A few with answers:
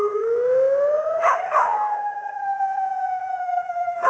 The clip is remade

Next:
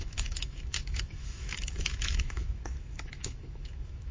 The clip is remade